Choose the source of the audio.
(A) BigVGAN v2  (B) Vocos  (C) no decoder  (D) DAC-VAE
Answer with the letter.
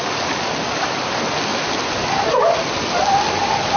C